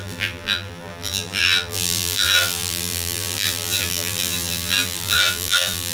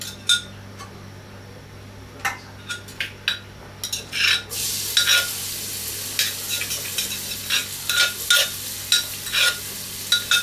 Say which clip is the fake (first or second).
first